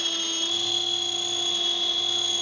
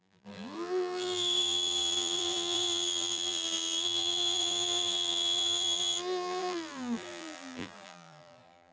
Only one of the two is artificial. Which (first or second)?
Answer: second